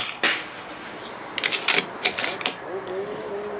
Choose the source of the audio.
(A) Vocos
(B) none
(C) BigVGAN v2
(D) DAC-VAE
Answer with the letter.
B